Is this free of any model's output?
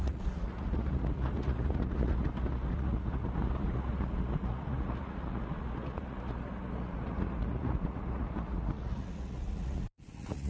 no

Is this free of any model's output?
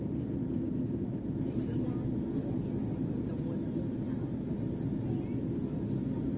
yes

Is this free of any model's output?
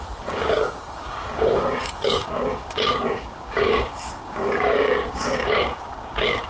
no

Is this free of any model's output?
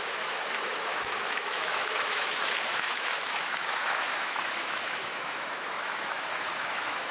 no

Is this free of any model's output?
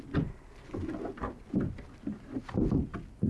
yes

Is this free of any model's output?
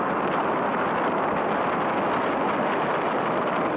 yes